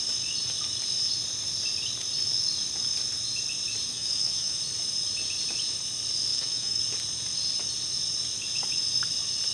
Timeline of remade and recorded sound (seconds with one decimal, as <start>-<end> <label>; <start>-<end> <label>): 0.0-3.9 recorded; 3.9-4.6 remade; 4.6-6.3 recorded; 6.3-6.8 remade; 6.8-9.5 recorded